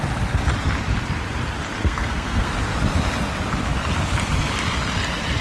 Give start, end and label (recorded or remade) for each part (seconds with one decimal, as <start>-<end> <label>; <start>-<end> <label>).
0.0-1.8 recorded; 1.8-2.5 remade; 2.5-5.4 recorded